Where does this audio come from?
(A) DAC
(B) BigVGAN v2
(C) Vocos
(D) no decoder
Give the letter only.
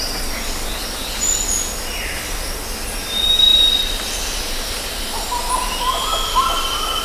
D